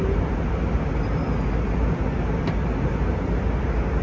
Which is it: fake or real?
real